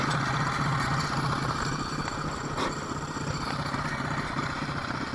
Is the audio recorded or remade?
recorded